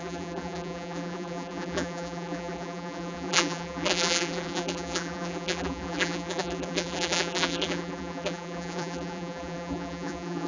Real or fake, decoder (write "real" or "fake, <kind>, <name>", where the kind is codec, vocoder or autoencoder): fake, vocoder, BigVGAN v2